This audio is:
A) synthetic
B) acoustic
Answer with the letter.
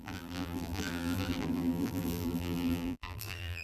A